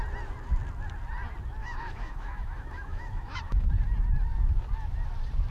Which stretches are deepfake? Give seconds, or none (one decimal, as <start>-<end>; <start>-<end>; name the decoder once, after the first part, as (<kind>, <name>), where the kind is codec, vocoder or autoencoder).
1.6-3.7 (autoencoder, DAC-VAE)